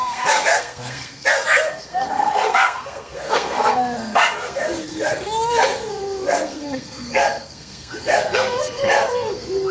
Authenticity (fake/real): fake